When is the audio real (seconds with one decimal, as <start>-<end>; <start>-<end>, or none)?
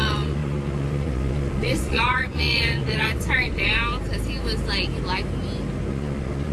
3.8-5.9